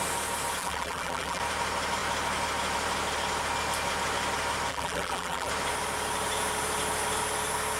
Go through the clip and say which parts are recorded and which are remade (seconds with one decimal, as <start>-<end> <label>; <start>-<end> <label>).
0.0-0.6 recorded; 0.6-1.4 remade; 1.4-4.7 recorded; 4.7-5.5 remade; 5.5-7.8 recorded

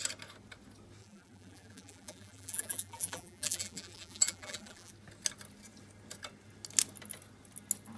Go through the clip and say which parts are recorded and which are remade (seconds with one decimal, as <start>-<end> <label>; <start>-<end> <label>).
0.0-1.0 recorded; 1.0-4.9 remade; 4.9-8.0 recorded

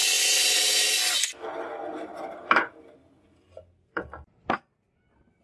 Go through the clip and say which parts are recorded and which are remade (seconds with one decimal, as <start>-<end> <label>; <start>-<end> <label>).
0.0-5.4 recorded

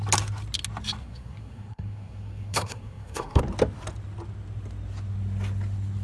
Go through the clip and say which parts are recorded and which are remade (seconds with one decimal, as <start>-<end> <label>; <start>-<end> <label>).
0.0-1.0 recorded; 1.0-3.4 remade; 3.4-6.0 recorded

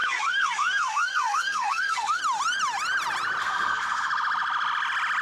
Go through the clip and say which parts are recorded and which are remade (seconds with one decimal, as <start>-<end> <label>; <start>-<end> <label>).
0.0-2.2 remade; 2.2-3.4 recorded; 3.4-4.1 remade; 4.1-5.2 recorded

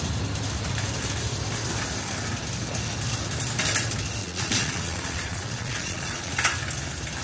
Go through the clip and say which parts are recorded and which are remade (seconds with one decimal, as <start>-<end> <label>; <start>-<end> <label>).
0.0-4.2 recorded; 4.2-6.3 remade; 6.3-7.2 recorded